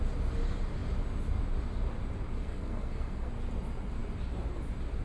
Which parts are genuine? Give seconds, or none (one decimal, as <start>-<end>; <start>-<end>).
0.0-2.4; 3.3-5.0